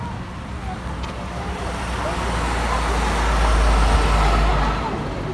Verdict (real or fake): real